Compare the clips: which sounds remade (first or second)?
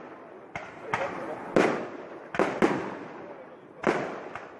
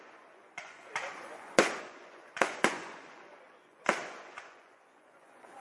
second